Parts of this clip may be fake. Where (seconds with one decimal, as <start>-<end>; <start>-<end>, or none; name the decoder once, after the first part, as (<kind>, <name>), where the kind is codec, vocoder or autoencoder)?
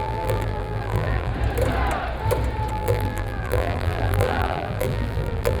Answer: 0.0-1.3 (vocoder, BigVGAN v2); 2.7-5.6